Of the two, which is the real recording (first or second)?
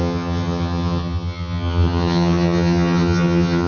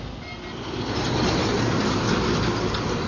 second